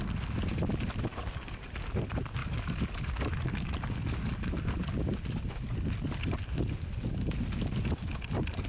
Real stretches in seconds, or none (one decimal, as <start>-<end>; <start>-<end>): 0.0-1.1; 1.7-2.4; 4.9-8.7